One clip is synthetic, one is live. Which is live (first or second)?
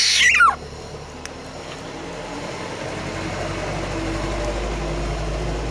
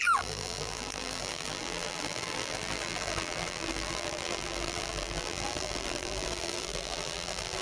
first